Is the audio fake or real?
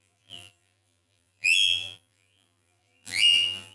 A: fake